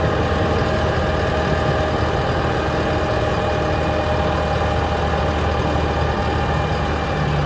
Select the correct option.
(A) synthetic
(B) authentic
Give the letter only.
B